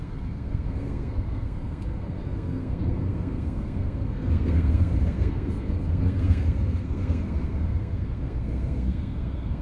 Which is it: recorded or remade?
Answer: remade